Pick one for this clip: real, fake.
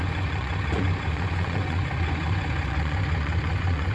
fake